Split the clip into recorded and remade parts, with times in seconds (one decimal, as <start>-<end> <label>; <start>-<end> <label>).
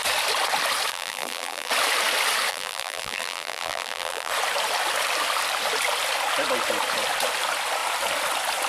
0.0-0.9 recorded; 0.9-1.7 remade; 1.7-2.5 recorded; 2.5-4.3 remade; 4.3-8.7 recorded